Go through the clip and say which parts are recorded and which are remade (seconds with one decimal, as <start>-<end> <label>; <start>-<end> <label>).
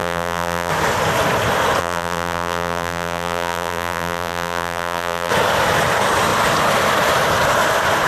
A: 0.0-0.7 remade; 0.7-1.8 recorded; 1.8-5.3 remade; 5.3-8.1 recorded